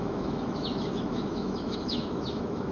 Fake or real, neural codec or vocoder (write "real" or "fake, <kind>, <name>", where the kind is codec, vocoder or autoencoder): fake, autoencoder, DAC-VAE